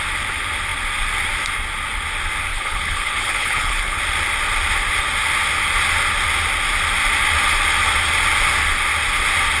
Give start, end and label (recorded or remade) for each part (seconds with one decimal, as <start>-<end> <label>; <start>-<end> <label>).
0.0-2.5 recorded; 2.5-4.0 remade; 4.0-9.6 recorded